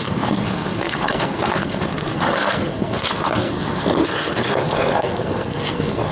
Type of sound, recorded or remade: remade